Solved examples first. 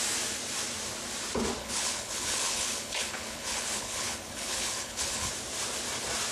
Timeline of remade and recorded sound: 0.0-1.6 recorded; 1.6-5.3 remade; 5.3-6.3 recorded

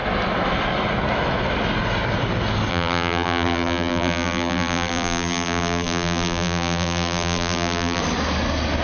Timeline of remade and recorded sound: 0.0-2.7 recorded; 2.7-8.0 remade; 8.0-8.8 recorded

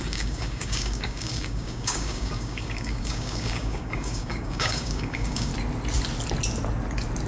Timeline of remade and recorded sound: 0.0-5.5 remade; 5.5-7.3 recorded

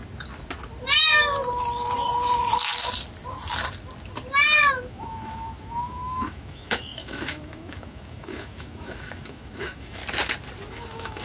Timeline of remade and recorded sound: 0.0-4.7 recorded; 4.7-10.0 remade; 10.0-10.7 recorded; 10.7-11.2 remade

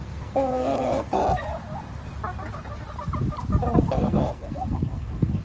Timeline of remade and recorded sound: 0.0-1.2 remade; 1.2-3.8 recorded; 3.8-5.4 remade

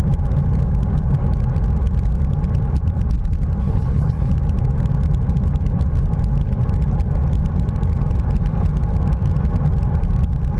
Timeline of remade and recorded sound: 0.0-3.6 recorded; 3.6-4.3 remade; 4.3-10.6 recorded